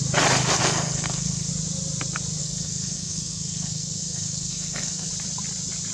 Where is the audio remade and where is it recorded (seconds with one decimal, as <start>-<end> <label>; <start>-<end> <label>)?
0.0-0.6 recorded; 0.6-1.5 remade; 1.5-2.4 recorded; 2.4-5.1 remade; 5.1-5.9 recorded